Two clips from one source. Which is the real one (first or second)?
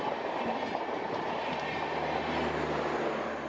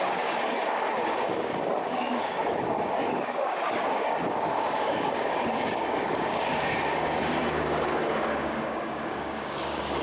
first